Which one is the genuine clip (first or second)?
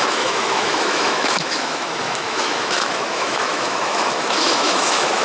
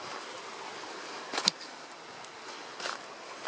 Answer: second